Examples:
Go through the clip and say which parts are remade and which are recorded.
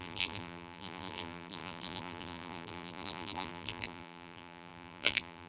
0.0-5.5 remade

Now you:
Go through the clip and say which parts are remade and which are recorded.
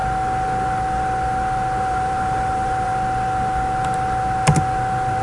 0.0-1.8 recorded; 1.8-2.9 remade; 2.9-5.2 recorded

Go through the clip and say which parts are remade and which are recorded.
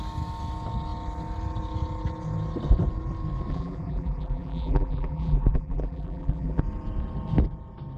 0.0-3.5 recorded; 3.5-6.6 remade; 6.6-8.0 recorded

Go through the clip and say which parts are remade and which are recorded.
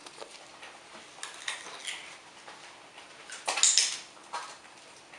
0.0-5.2 recorded